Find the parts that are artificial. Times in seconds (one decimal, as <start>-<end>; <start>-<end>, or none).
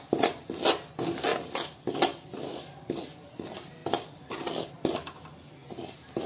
none